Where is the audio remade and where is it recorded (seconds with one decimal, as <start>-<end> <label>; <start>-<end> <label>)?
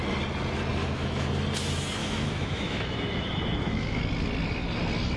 0.0-0.8 recorded; 0.8-1.3 remade; 1.3-2.0 recorded; 2.0-4.0 remade; 4.0-5.2 recorded